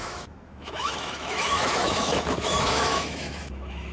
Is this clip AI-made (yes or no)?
yes